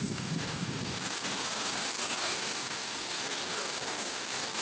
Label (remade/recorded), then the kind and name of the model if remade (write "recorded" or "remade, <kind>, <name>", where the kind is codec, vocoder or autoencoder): remade, codec, DAC